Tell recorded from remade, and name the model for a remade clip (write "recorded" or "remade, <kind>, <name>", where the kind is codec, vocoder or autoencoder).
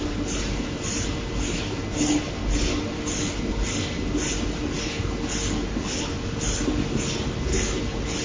recorded